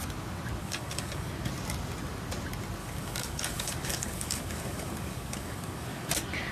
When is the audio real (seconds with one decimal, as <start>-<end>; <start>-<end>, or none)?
0.0-0.6; 1.3-2.8; 6.1-6.5